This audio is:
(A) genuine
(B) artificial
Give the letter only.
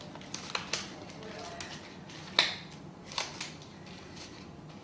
A